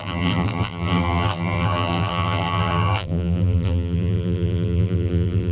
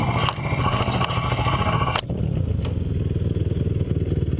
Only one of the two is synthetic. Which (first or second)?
first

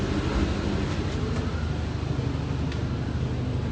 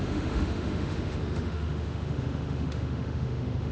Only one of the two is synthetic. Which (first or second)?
second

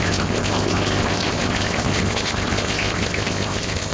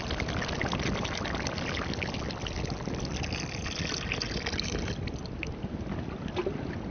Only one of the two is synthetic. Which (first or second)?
first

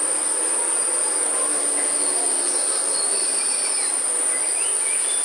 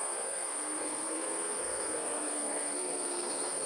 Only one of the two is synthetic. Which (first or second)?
second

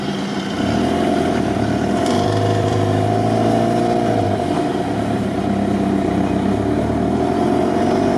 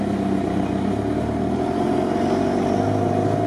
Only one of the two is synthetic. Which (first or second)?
first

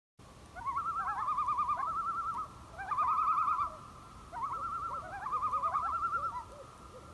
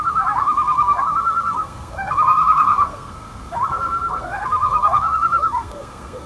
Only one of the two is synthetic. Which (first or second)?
second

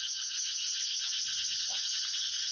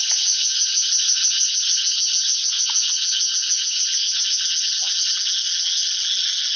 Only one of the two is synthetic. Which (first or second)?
first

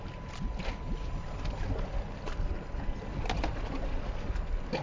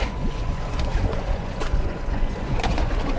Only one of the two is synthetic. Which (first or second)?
second